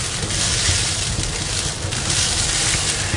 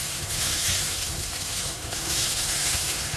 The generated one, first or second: second